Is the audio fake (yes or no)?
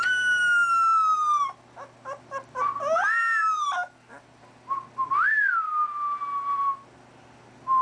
no